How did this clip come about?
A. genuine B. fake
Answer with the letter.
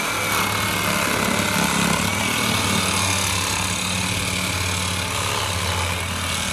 A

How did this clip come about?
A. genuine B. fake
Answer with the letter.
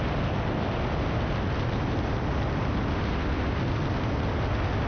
A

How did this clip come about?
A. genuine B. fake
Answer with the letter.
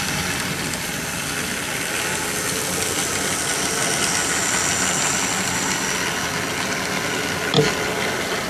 A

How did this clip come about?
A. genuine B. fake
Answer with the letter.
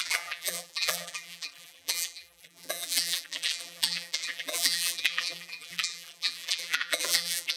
B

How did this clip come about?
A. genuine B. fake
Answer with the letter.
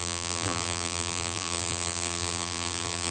B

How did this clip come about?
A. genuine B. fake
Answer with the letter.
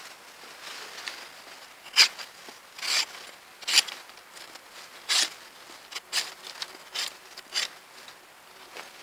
A